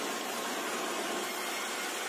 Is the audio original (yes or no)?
yes